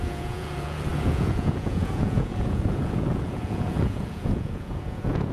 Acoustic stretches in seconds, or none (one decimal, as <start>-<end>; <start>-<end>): none